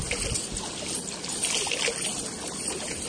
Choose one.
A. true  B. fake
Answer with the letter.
A